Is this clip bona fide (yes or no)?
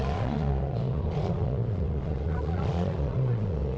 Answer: no